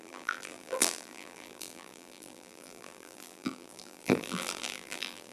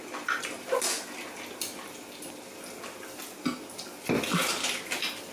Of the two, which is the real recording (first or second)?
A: second